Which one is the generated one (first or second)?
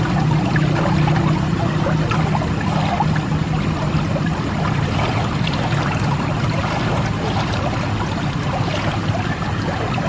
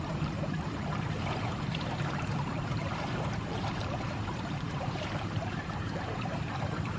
second